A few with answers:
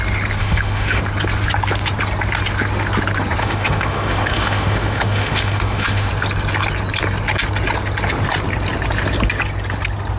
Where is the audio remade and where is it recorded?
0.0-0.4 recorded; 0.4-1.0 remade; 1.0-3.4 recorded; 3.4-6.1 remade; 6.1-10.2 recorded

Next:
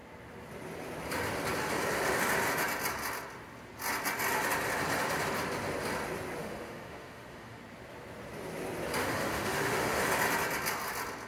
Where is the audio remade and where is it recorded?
0.0-6.4 recorded; 6.4-7.6 remade; 7.6-9.0 recorded; 9.0-10.0 remade; 10.0-11.3 recorded

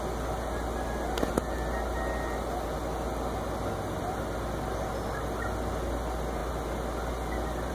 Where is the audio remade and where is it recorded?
0.0-7.7 recorded

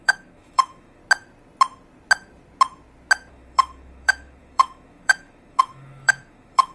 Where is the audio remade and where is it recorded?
0.0-1.0 remade; 1.0-3.3 recorded; 3.3-6.7 remade